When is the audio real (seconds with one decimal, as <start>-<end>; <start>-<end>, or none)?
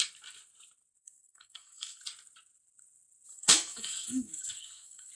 0.0-1.0; 2.0-3.3